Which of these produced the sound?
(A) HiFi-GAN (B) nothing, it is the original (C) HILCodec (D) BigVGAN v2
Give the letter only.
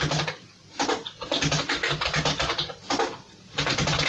B